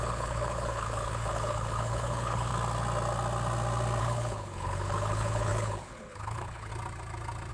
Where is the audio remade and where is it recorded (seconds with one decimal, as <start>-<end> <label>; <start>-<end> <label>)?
0.0-2.5 remade; 2.5-4.0 recorded; 4.0-6.7 remade; 6.7-7.5 recorded